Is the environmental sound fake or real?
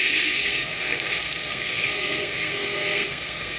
fake